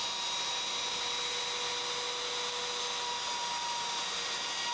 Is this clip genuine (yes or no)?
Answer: yes